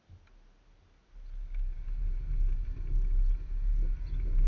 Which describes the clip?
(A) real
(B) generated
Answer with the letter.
A